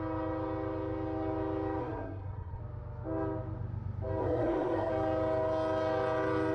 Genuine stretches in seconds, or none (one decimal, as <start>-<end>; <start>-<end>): 0.0-1.8; 2.6-4.2; 4.9-6.5